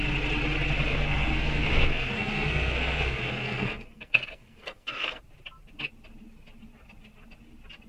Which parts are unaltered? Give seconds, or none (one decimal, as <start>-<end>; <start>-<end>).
0.0-0.9; 5.2-7.9